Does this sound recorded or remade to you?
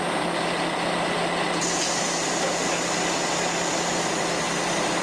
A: recorded